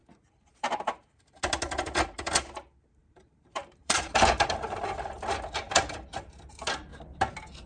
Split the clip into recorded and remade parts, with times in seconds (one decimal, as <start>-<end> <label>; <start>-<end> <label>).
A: 0.0-1.1 remade; 1.1-3.0 recorded; 3.0-4.8 remade; 4.8-7.7 recorded